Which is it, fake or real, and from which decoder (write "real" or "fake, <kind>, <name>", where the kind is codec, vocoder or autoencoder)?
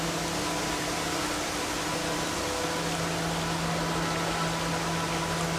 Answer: real